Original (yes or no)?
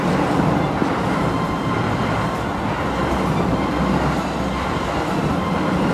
yes